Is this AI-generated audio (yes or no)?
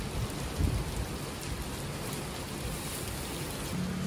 no